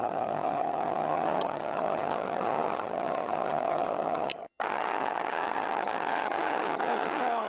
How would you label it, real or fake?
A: fake